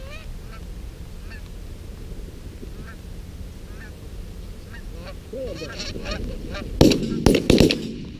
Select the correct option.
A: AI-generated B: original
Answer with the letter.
B